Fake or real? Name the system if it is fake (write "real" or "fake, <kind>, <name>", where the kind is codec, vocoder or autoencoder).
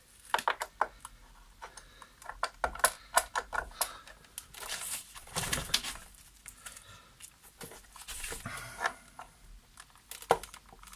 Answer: real